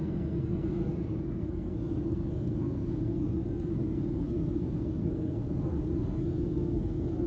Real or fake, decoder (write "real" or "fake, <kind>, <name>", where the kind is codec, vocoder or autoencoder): fake, codec, SNAC